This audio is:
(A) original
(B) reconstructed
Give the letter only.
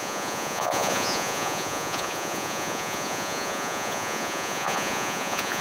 B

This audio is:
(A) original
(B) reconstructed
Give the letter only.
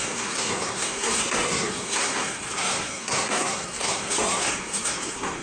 B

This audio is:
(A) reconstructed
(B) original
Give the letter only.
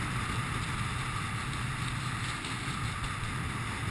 B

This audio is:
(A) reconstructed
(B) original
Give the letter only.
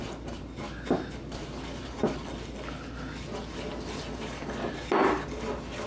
B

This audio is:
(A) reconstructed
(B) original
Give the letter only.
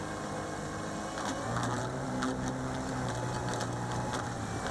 A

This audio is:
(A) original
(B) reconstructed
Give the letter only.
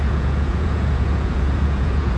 B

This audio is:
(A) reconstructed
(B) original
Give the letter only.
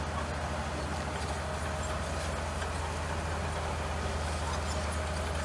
B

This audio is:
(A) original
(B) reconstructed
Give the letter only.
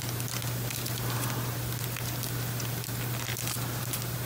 A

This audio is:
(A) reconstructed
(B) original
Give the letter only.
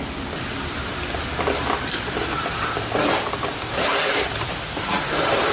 A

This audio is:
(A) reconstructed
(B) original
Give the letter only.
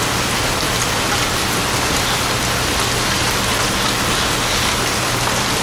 B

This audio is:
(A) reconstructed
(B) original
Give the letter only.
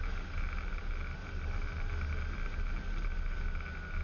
B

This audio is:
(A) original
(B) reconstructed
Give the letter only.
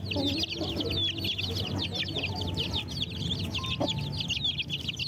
A